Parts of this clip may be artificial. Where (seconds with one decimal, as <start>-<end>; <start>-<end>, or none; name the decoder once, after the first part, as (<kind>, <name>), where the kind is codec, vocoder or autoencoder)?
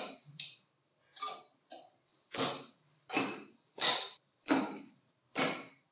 0.0-5.9 (vocoder, BigVGAN v2)